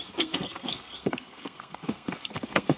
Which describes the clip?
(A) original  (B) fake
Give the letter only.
B